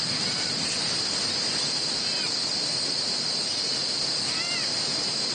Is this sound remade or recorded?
recorded